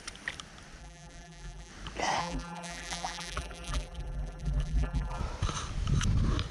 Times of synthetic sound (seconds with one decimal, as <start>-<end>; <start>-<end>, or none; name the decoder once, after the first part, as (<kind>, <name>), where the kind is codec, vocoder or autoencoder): 0.8-1.7 (vocoder, BigVGAN v2); 2.2-5.2